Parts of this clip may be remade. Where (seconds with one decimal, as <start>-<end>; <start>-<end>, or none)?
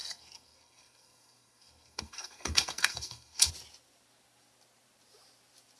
0.0-3.5